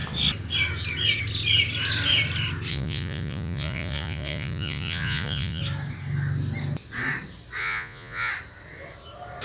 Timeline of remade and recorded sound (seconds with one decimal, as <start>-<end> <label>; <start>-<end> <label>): 0.0-2.7 recorded; 2.7-5.6 remade; 5.6-7.6 recorded; 7.6-8.3 remade; 8.3-9.4 recorded